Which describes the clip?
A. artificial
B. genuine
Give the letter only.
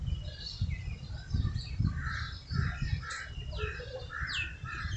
B